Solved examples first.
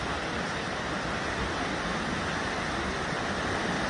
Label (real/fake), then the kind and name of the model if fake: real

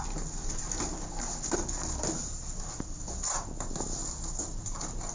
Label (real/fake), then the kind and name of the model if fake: real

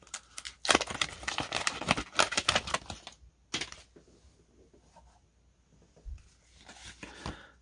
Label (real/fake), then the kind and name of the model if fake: real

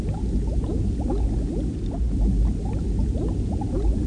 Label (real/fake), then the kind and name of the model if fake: real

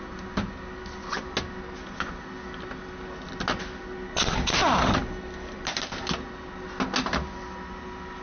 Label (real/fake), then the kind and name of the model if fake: real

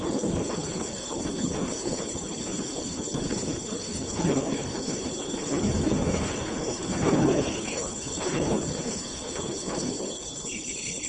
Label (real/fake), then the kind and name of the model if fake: fake, codec, HILCodec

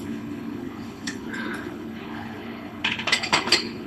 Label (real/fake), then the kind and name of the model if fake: fake, codec, HILCodec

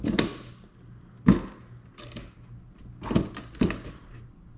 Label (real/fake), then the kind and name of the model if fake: real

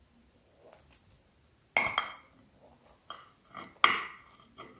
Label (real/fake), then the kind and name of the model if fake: real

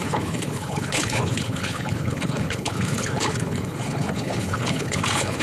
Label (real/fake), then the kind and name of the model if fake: fake, codec, HILCodec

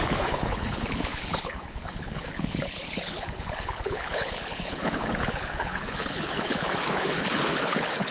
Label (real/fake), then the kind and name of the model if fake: fake, codec, HILCodec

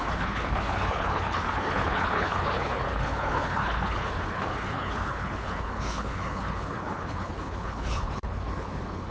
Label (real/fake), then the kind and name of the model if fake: fake, codec, HILCodec